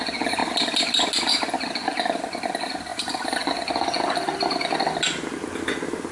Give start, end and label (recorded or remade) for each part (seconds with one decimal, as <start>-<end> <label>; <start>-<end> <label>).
0.0-2.9 recorded; 2.9-3.7 remade; 3.7-6.1 recorded